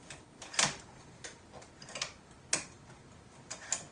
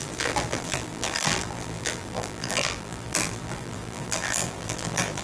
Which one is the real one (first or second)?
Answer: first